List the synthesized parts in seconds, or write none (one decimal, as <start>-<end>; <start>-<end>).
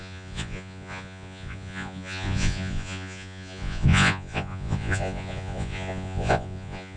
0.0-7.0